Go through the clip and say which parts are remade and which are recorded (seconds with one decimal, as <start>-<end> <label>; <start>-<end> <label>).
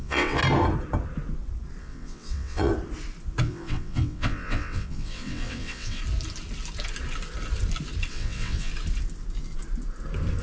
0.0-0.4 remade; 0.4-1.8 recorded; 1.8-2.7 remade; 2.7-3.4 recorded; 3.4-6.0 remade; 6.0-8.1 recorded; 8.1-8.7 remade; 8.7-10.4 recorded